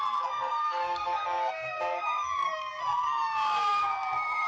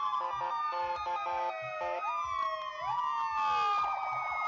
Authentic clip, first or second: second